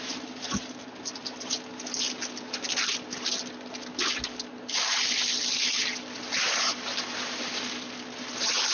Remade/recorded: recorded